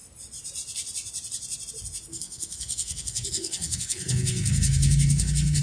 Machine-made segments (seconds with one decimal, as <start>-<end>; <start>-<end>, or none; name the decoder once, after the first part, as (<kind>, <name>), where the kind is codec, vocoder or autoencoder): 2.1-5.6 (codec, SNAC)